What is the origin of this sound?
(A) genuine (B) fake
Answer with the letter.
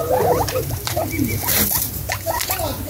B